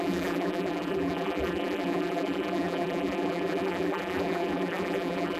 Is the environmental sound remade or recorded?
remade